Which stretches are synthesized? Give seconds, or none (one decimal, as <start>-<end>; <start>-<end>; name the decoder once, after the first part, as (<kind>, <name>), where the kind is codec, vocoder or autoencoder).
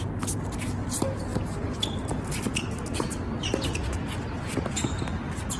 none